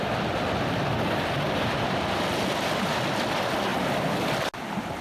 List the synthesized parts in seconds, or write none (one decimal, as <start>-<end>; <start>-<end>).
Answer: 3.7-4.4